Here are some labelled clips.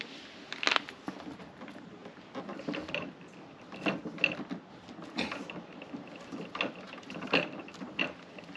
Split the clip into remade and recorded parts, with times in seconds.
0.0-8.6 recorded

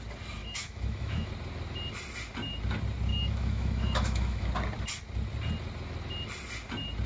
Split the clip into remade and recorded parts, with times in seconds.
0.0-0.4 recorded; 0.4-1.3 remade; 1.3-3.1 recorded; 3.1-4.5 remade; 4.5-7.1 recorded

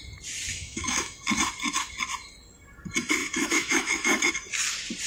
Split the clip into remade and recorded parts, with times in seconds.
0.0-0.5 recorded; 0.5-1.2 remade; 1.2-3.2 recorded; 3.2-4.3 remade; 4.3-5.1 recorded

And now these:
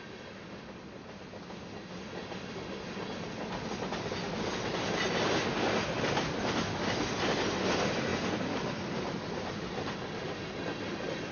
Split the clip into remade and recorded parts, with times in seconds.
0.0-11.3 recorded

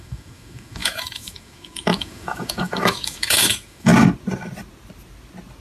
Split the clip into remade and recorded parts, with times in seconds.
0.0-3.9 remade; 3.9-5.6 recorded

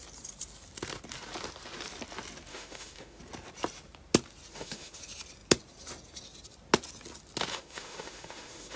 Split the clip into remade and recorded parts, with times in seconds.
0.0-2.5 recorded; 2.5-3.2 remade; 3.2-4.5 recorded; 4.5-5.0 remade; 5.0-7.5 recorded; 7.5-8.8 remade